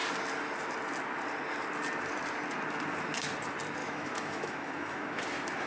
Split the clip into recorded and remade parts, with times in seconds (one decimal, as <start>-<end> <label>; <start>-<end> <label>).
0.0-3.8 recorded; 3.8-5.2 remade; 5.2-5.7 recorded